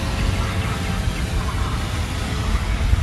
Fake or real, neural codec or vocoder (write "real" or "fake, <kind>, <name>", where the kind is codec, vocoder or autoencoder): real